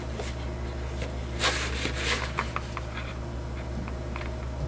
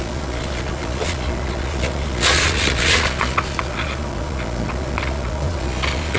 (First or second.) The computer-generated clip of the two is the second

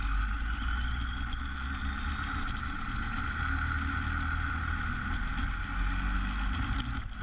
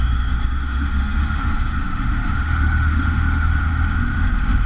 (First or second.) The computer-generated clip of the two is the second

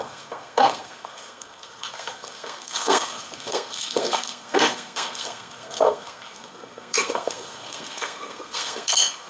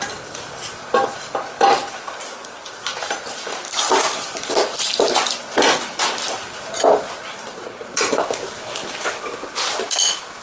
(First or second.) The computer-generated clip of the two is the first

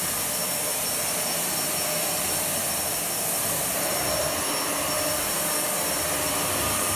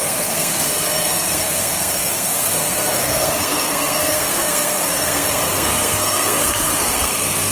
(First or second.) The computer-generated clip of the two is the second